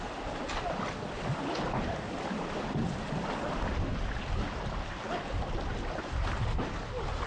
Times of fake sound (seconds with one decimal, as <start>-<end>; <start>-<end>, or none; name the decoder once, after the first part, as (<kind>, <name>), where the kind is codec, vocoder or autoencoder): none